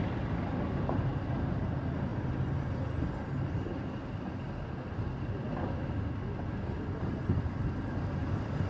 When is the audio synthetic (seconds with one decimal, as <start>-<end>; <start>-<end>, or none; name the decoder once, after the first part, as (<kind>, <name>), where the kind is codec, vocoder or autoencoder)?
2.1-3.1 (vocoder, BigVGAN v2)

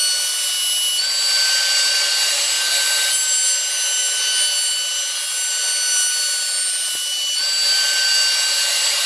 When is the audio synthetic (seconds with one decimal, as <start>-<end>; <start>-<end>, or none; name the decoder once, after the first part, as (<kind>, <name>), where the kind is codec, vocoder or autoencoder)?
none

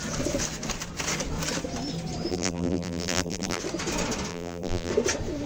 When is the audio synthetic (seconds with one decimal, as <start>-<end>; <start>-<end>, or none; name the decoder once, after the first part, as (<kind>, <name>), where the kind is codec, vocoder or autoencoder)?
2.3-3.6 (vocoder, BigVGAN v2); 4.3-4.9

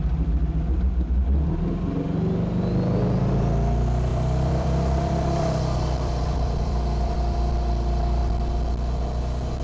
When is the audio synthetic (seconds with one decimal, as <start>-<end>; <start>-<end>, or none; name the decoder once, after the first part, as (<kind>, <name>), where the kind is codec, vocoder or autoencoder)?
4.1-7.5 (vocoder, BigVGAN v2)

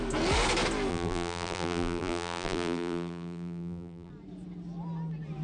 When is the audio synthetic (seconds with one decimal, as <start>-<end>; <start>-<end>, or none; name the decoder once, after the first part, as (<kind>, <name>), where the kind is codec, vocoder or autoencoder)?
0.9-4.1 (vocoder, BigVGAN v2)

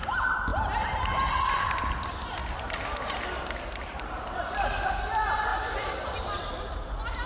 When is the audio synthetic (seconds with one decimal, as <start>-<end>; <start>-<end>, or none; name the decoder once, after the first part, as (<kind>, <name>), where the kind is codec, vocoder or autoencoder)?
0.0-5.5 (vocoder, BigVGAN v2); 6.1-7.3

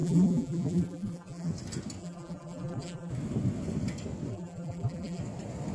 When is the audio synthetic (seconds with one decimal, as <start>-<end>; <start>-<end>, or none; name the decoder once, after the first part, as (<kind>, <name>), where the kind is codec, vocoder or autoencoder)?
0.0-1.5 (vocoder, BigVGAN v2); 2.0-3.1; 4.3-5.2

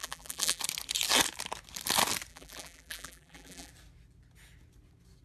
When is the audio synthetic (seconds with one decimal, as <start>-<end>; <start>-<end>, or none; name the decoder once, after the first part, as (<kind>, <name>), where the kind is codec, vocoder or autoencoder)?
0.0-0.6 (vocoder, BigVGAN v2); 2.3-3.7